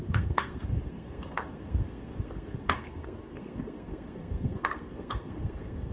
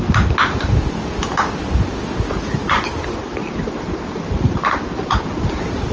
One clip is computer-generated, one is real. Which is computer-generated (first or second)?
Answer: first